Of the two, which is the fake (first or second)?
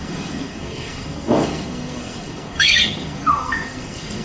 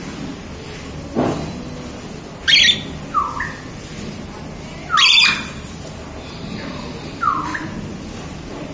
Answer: first